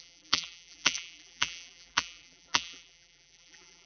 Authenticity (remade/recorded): remade